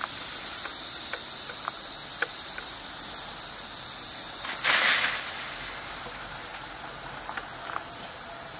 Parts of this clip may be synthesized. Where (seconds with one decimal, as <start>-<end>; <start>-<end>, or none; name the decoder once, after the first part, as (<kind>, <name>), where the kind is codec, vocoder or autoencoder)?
2.1-2.7 (vocoder, BigVGAN v2)